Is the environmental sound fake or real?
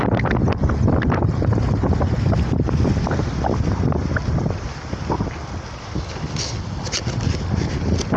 real